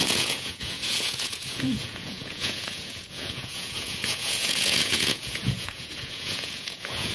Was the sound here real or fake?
fake